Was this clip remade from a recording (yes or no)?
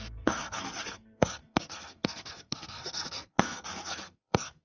yes